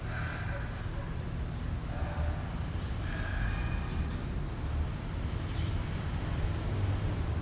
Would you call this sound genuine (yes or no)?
yes